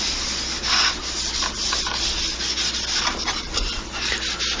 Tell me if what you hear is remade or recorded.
recorded